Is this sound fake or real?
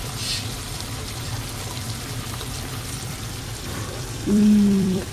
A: fake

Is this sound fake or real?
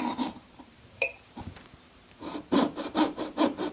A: fake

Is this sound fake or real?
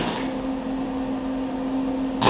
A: real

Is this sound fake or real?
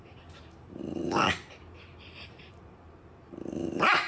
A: fake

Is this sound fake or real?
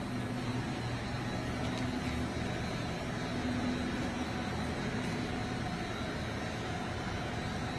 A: real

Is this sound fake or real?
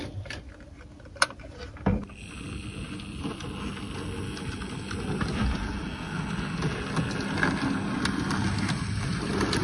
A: real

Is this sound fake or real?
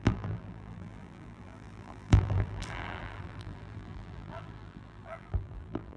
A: fake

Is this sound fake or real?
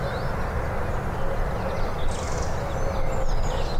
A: real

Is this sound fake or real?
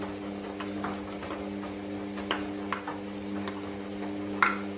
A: real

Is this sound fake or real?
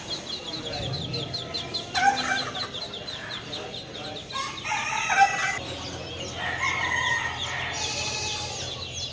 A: real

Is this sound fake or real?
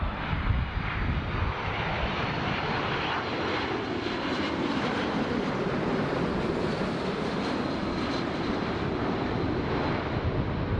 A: fake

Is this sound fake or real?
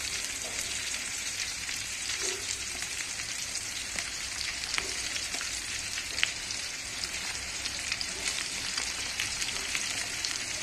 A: fake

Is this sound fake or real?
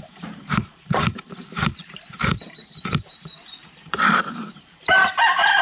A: fake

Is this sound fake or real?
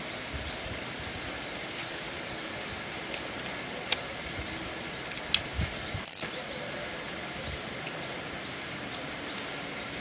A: real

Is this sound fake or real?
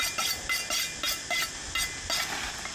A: real